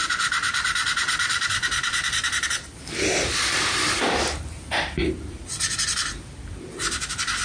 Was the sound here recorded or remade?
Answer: remade